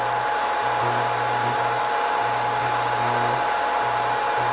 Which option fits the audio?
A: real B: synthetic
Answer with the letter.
A